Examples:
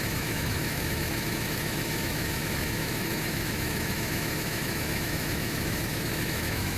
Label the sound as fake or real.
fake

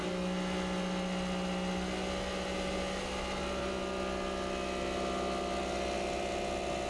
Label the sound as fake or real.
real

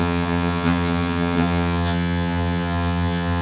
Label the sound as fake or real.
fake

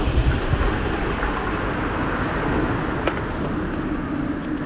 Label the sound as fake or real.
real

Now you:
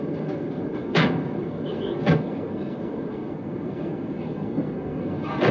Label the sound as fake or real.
fake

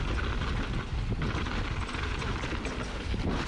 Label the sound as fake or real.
real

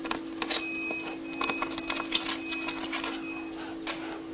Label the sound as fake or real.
real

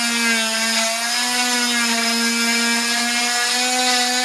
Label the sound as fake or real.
real